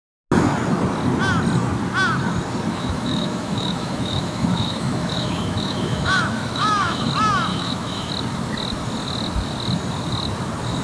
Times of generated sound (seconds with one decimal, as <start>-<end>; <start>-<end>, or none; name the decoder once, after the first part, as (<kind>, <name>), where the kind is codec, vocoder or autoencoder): 2.7-7.1 (autoencoder, DAC-VAE); 7.5-8.1